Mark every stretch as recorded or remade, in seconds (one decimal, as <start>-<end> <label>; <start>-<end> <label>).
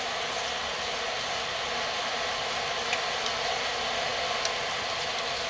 0.0-5.5 recorded